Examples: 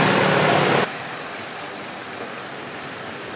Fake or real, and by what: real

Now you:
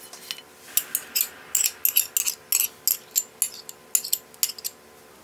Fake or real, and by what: real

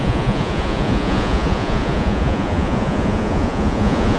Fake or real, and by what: fake, vocoder, Vocos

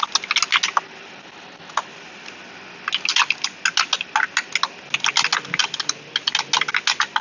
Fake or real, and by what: real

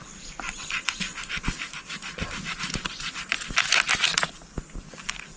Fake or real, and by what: fake, vocoder, BigVGAN v2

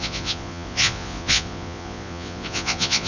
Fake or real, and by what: fake, vocoder, Vocos